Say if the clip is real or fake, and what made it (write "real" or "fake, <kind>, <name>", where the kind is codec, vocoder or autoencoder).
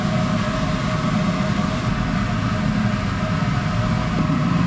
real